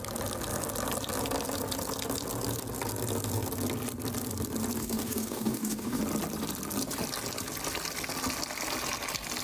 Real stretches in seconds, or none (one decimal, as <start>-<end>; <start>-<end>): 0.0-4.8; 6.0-9.4